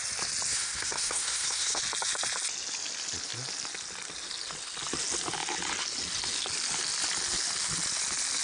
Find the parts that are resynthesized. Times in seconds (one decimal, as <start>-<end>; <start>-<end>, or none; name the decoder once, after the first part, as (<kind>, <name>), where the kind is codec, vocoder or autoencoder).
0.5-1.8 (codec, SNAC)